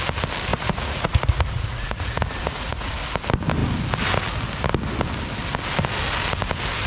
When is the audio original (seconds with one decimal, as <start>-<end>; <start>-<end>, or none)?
0.0-0.5; 2.9-6.9